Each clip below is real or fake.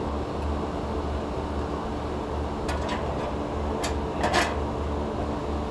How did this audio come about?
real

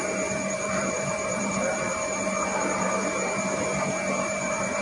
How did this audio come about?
fake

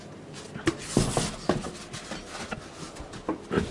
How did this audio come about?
real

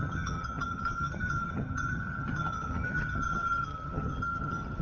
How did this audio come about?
fake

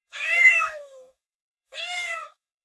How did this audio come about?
fake